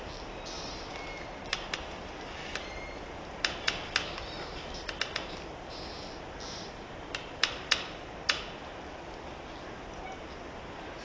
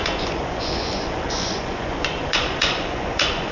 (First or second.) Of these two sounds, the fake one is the second